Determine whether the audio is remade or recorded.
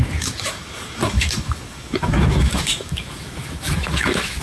remade